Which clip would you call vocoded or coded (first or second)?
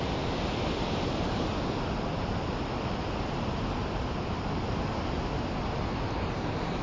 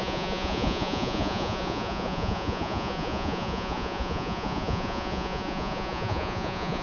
second